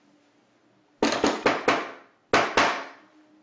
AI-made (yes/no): no